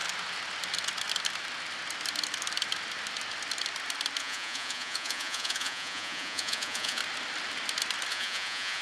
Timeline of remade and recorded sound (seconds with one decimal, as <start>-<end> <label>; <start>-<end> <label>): 0.0-4.2 recorded; 4.2-7.0 remade; 7.0-8.1 recorded; 8.1-8.8 remade